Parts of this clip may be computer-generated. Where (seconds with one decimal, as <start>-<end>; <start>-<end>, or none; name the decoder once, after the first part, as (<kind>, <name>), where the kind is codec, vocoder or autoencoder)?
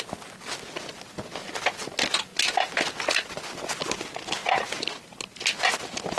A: none